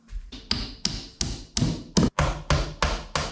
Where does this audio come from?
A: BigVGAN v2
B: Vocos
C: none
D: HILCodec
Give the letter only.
C